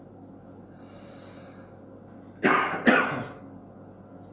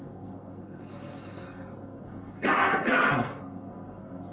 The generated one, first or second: second